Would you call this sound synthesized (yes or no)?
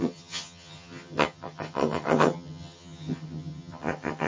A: yes